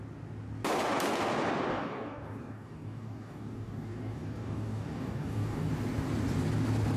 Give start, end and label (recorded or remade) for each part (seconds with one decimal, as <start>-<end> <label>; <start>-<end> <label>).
0.0-1.7 recorded; 1.7-5.7 remade; 5.7-7.0 recorded